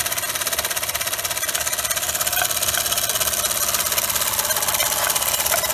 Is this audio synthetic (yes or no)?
no